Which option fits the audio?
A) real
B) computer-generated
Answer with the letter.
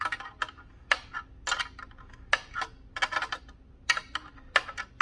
A